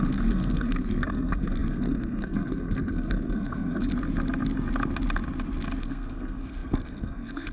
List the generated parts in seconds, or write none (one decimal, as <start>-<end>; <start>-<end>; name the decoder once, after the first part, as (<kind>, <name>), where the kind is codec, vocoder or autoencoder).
0.0-3.9 (codec, SNAC); 5.8-7.5